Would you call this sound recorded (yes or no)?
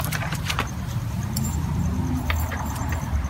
no